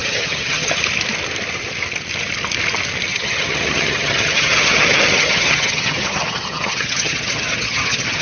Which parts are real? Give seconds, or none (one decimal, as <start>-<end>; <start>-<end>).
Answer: 0.8-3.1